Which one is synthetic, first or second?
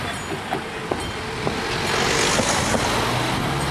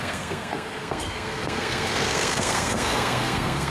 second